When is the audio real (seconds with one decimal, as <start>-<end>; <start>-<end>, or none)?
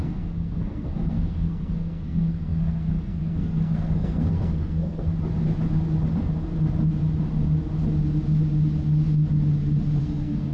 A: 5.1-10.0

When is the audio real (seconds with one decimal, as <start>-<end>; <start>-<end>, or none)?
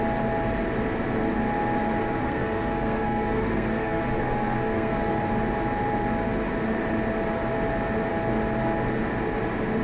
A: 0.0-2.2; 5.1-9.8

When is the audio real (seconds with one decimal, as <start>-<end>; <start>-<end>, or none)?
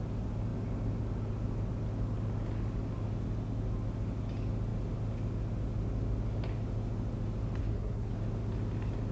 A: 0.0-7.6; 8.1-9.1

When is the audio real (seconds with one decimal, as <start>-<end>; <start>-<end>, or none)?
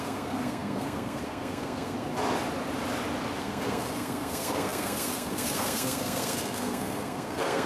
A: 2.1-3.4